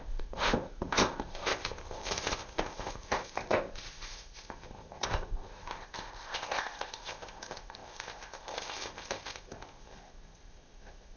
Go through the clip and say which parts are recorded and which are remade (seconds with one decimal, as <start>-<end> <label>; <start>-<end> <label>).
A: 0.0-11.2 remade

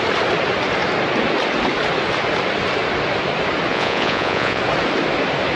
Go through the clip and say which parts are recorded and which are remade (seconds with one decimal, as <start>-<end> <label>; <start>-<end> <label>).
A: 0.0-3.7 recorded; 3.7-4.6 remade; 4.6-5.6 recorded

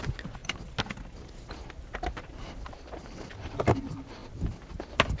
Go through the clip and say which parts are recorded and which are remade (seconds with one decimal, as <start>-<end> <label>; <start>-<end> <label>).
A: 0.0-5.2 recorded

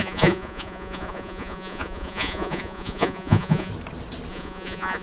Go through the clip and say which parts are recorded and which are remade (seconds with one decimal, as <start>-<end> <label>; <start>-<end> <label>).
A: 0.0-3.7 remade; 3.7-4.3 recorded; 4.3-5.0 remade

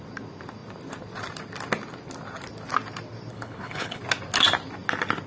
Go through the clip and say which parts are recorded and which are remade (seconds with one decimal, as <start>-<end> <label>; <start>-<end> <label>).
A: 0.0-3.3 recorded; 3.3-4.0 remade; 4.0-5.3 recorded

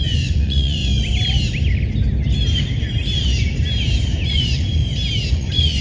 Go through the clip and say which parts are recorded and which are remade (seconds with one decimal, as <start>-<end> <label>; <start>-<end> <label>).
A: 0.0-0.8 remade; 0.8-4.3 recorded; 4.3-4.8 remade; 4.8-5.3 recorded; 5.3-5.8 remade